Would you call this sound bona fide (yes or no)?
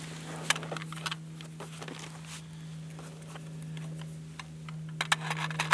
yes